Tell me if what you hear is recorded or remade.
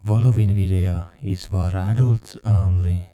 remade